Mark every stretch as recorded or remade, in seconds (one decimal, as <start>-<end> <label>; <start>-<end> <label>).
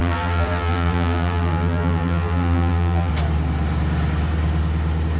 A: 0.0-3.1 remade; 3.1-5.2 recorded